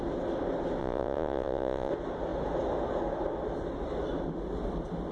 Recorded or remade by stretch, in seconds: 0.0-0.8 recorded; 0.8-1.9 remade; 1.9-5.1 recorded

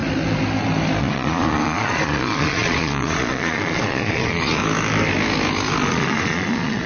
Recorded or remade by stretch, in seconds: 0.0-1.0 recorded; 1.0-4.6 remade; 4.6-5.9 recorded; 5.9-6.9 remade

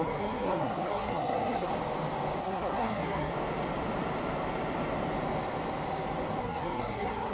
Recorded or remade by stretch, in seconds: 0.0-1.7 remade; 1.7-2.4 recorded; 2.4-3.3 remade; 3.3-6.4 recorded; 6.4-7.3 remade

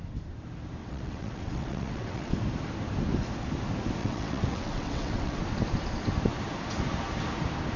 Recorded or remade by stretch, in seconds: 0.0-0.8 recorded; 0.8-2.3 remade; 2.3-4.0 recorded; 4.0-5.4 remade; 5.4-7.8 recorded

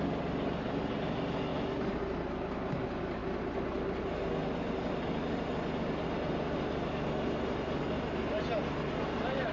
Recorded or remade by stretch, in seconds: 0.0-9.5 recorded

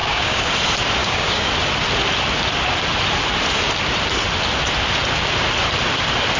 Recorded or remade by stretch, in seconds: 0.0-0.5 remade; 0.5-1.0 recorded; 1.0-1.5 remade; 1.5-6.4 recorded

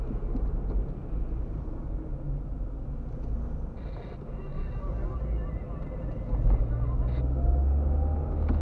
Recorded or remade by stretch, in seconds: 0.0-8.6 recorded

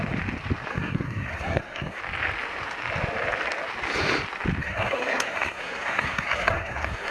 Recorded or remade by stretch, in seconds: 0.0-0.7 recorded; 0.7-2.0 remade; 2.0-4.6 recorded; 4.6-7.1 remade